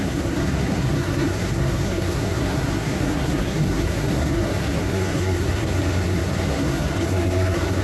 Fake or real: fake